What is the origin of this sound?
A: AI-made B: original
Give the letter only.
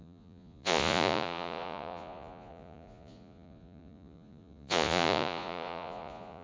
A